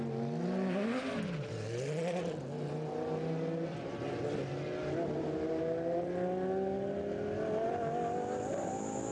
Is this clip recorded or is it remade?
recorded